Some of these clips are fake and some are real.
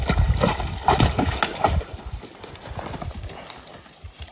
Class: real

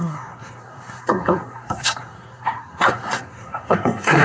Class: fake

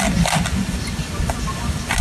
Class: fake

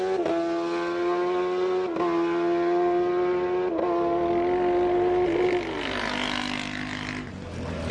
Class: real